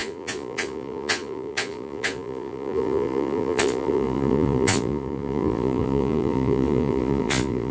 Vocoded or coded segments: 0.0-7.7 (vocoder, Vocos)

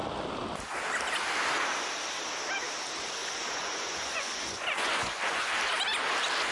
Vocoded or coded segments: 3.2-5.5 (vocoder, Vocos)